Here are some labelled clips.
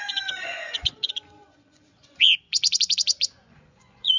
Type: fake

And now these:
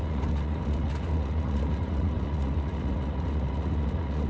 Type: fake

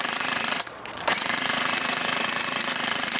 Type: fake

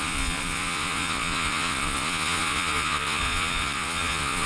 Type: fake